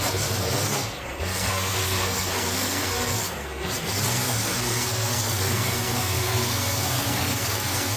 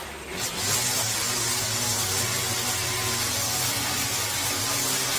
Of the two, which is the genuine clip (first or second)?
second